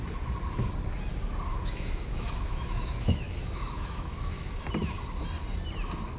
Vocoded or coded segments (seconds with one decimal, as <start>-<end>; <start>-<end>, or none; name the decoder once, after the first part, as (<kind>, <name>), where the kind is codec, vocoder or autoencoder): 1.5-4.5 (autoencoder, DAC-VAE)